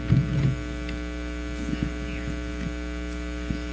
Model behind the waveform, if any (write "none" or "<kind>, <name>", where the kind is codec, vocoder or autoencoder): none